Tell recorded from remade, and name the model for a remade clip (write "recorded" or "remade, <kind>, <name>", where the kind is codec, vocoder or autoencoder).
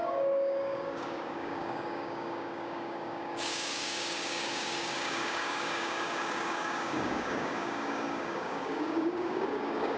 remade, codec, DAC